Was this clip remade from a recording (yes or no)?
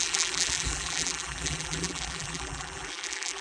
yes